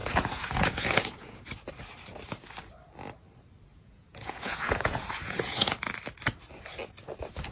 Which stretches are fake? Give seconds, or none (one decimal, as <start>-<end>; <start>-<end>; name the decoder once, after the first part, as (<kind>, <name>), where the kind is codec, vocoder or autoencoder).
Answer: 0.0-1.4 (vocoder, Vocos); 3.7-5.9

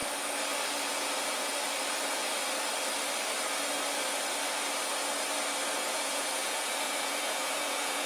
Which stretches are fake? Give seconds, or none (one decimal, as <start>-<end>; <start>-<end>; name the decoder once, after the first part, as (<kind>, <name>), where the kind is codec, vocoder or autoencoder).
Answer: 0.9-1.5 (vocoder, Vocos); 5.7-8.1

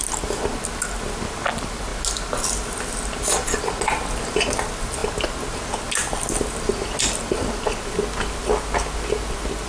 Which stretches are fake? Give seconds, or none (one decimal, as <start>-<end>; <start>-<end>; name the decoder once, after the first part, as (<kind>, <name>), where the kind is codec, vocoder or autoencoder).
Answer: none

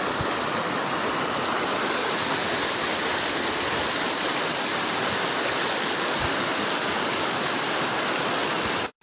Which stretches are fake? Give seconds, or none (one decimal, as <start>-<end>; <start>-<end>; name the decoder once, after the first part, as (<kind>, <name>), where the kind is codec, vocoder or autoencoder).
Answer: 2.0-2.6 (vocoder, Vocos)

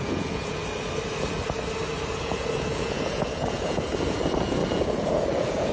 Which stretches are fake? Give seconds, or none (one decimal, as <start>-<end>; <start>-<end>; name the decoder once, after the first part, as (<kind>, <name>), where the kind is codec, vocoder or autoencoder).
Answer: 0.0-0.6 (vocoder, Vocos); 2.2-5.7

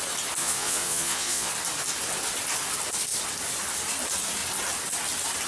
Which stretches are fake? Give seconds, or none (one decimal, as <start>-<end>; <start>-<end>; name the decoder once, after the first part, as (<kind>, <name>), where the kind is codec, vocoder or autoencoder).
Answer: 0.4-1.5 (vocoder, Vocos)